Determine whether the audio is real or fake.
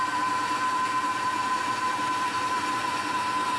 real